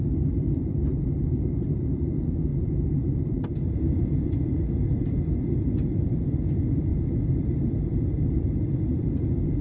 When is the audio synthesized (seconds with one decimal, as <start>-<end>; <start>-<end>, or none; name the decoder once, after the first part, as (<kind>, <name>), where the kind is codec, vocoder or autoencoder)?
0.0-9.6 (vocoder, BigVGAN v2)